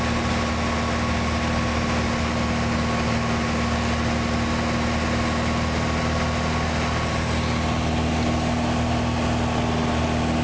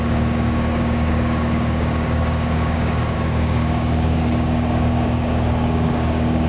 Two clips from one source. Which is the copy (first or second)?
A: second